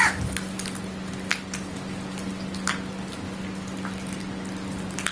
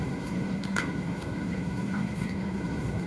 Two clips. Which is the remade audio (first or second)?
second